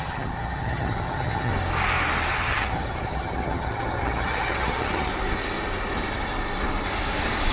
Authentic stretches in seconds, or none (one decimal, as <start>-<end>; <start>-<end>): 1.5-2.3; 5.1-7.5